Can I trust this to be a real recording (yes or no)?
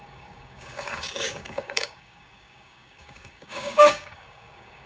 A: no